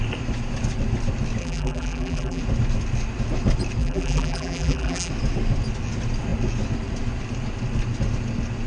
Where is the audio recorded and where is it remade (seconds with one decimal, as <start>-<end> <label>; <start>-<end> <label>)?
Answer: 0.0-1.4 recorded; 1.4-2.4 remade; 2.4-3.8 recorded; 3.8-5.1 remade; 5.1-8.7 recorded